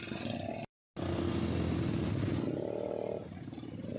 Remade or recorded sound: recorded